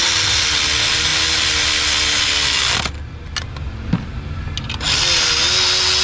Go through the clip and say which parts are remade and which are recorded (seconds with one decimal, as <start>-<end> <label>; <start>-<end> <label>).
0.0-6.0 recorded